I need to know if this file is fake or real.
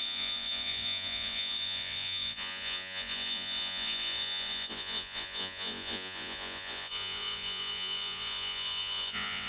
fake